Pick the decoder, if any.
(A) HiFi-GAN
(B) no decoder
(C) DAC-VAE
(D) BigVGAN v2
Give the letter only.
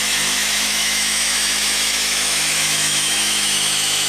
C